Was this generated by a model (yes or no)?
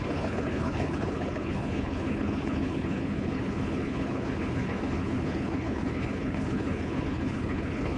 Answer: yes